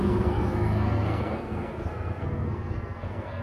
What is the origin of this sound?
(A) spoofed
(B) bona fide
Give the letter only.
A